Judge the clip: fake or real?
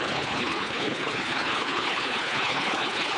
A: fake